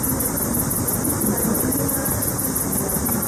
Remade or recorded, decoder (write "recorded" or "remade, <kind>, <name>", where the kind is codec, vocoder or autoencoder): recorded